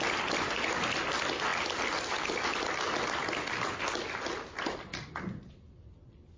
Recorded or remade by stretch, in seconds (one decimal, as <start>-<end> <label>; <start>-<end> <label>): 0.0-6.4 recorded